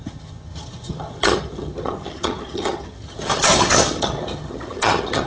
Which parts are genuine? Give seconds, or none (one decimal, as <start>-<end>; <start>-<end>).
none